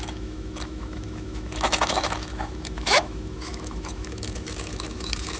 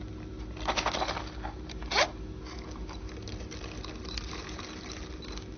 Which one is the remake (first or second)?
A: first